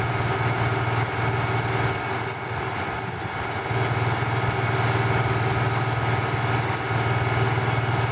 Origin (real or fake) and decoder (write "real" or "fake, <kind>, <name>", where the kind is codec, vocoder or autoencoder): real